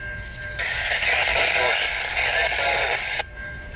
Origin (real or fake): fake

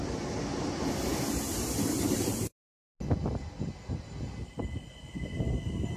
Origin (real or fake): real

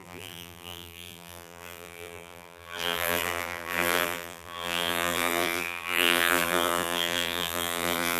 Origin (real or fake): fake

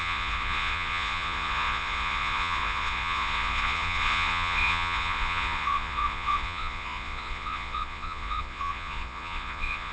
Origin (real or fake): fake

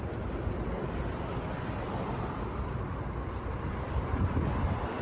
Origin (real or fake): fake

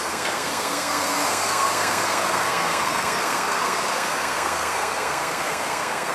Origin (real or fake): fake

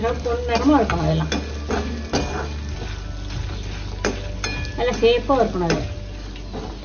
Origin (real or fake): real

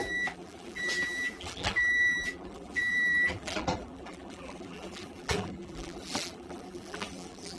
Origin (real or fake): fake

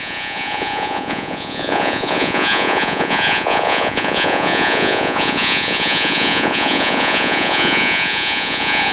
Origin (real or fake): fake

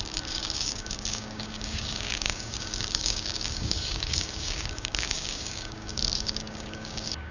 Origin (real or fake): fake